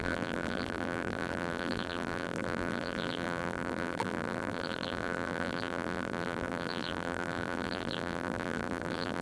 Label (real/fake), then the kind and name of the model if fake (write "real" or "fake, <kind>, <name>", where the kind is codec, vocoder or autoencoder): fake, vocoder, BigVGAN v2